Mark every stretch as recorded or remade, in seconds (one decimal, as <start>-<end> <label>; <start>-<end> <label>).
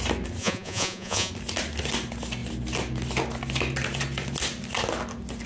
0.0-0.4 recorded; 0.4-1.3 remade; 1.3-5.5 recorded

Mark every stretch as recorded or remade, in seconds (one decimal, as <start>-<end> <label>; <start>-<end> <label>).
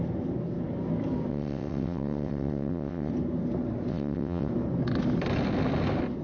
0.0-1.3 recorded; 1.3-3.1 remade; 3.1-3.9 recorded; 3.9-4.5 remade; 4.5-6.2 recorded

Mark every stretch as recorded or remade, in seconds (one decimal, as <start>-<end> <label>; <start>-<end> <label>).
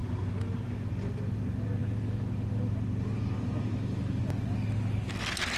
0.0-5.6 recorded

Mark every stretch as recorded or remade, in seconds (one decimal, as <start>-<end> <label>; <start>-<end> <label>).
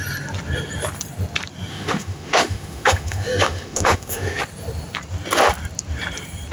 0.0-1.7 recorded; 1.7-4.4 remade; 4.4-6.5 recorded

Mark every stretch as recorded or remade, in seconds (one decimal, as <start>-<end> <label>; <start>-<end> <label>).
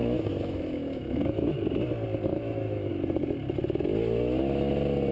0.0-1.5 remade; 1.5-2.3 recorded; 2.3-2.9 remade; 2.9-5.1 recorded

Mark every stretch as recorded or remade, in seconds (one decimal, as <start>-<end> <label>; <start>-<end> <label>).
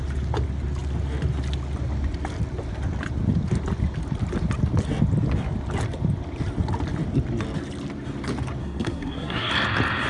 0.0-8.6 recorded; 8.6-9.5 remade; 9.5-10.1 recorded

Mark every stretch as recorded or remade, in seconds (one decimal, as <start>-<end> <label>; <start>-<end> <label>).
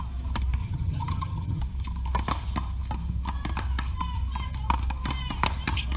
0.0-0.6 recorded; 0.6-1.6 remade; 1.6-6.0 recorded